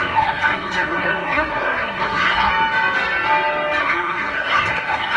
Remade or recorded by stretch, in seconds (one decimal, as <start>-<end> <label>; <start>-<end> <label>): 0.0-2.5 remade; 2.5-3.8 recorded; 3.8-5.2 remade